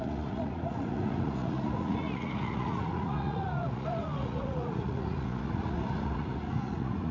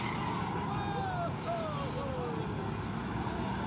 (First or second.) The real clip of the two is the second